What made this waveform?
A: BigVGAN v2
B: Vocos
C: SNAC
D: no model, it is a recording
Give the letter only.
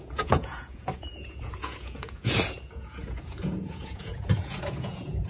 B